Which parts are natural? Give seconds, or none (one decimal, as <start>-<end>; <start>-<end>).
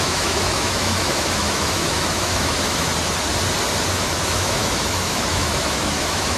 2.9-3.9